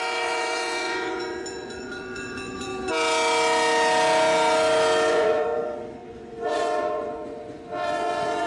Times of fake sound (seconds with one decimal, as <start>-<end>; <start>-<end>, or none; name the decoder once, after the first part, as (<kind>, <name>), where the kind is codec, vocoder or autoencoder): 0.0-2.7 (vocoder, Vocos); 5.1-8.5